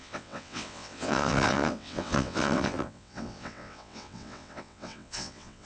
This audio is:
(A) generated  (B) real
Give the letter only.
A